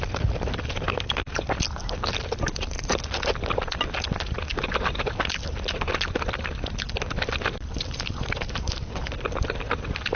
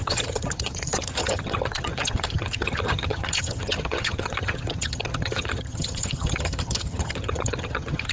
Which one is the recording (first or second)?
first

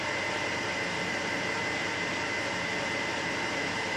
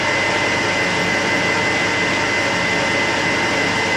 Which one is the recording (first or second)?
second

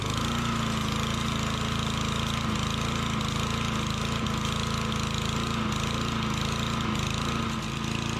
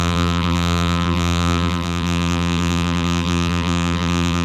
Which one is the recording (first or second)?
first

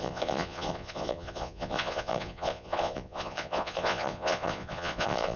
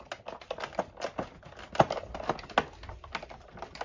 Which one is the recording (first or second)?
second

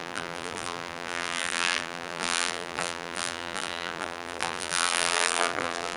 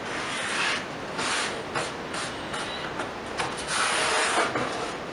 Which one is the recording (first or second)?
second